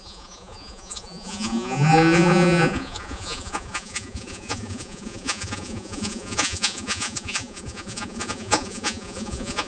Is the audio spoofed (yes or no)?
yes